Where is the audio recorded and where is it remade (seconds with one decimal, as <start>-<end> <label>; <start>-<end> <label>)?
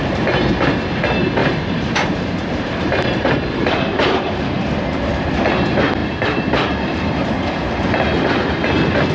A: 0.0-1.4 recorded; 1.4-4.3 remade; 4.3-6.0 recorded; 6.0-7.3 remade; 7.3-9.1 recorded